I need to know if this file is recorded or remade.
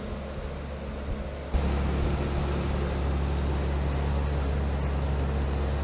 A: recorded